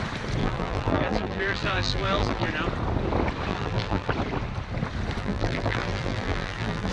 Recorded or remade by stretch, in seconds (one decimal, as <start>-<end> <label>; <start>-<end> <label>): 0.0-0.4 recorded; 0.4-2.5 remade; 2.5-3.5 recorded; 3.5-4.1 remade; 4.1-5.2 recorded; 5.2-6.9 remade

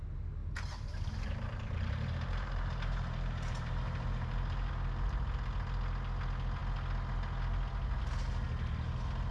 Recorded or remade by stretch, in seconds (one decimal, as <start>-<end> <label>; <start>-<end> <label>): 0.0-0.4 recorded; 0.4-4.7 remade; 4.7-9.3 recorded